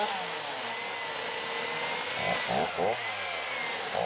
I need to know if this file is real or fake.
real